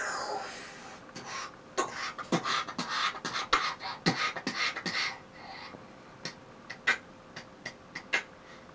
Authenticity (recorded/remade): recorded